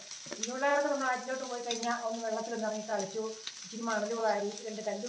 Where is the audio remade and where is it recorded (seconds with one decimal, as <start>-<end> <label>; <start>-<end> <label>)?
0.0-4.2 recorded; 4.2-5.1 remade